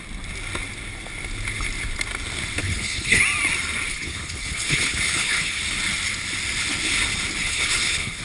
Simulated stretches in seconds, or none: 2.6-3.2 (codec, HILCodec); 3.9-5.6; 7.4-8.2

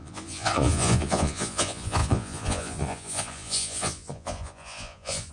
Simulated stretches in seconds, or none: 0.0-5.3 (vocoder, Vocos)

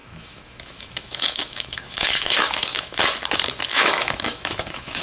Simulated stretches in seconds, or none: 0.0-3.0 (autoencoder, DAC-VAE); 3.7-5.0

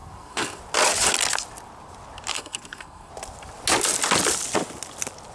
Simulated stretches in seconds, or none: 0.0-0.6 (codec, SNAC); 2.3-3.1

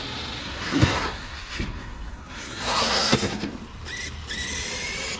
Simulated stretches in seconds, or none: 0.4-3.5 (codec, SNAC)

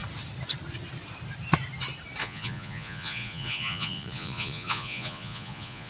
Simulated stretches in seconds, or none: 2.2-5.9 (vocoder, Vocos)

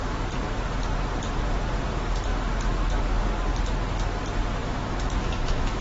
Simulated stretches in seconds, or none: 4.6-5.8 (autoencoder, DAC-VAE)